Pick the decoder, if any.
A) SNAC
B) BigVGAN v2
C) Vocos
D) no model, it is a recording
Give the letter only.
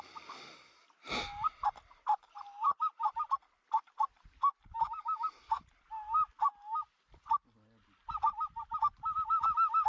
D